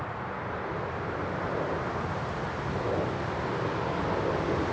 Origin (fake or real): real